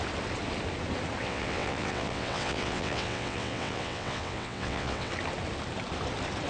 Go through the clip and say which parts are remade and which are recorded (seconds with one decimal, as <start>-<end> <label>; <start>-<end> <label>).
0.0-1.2 recorded; 1.2-5.1 remade; 5.1-6.5 recorded